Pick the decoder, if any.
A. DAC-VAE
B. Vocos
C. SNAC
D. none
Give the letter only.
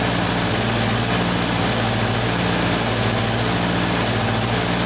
D